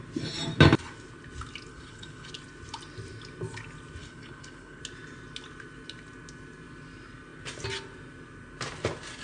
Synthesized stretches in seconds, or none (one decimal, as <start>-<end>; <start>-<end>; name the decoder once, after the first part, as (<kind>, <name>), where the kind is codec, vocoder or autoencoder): 1.7-2.3 (codec, HILCodec); 4.0-4.8